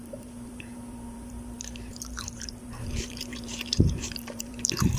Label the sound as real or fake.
fake